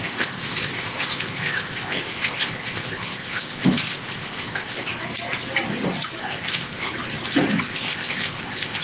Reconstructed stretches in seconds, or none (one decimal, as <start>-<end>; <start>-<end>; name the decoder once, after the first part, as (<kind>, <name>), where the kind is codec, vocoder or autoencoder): 0.0-4.9 (codec, ZipCodec); 6.2-6.9; 7.6-8.8